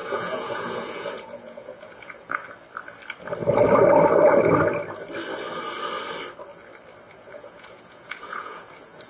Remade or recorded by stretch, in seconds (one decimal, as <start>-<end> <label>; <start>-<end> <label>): 0.0-2.4 remade; 2.4-7.1 recorded; 7.1-9.1 remade